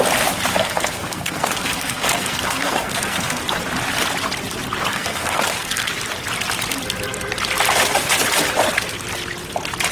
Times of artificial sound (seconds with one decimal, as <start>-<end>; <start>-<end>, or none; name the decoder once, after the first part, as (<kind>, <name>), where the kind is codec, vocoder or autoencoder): 0.5-3.4 (codec, SNAC); 4.9-5.9